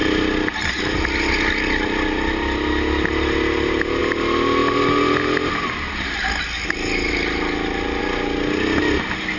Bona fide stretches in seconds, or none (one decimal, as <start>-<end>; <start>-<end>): 0.0-9.4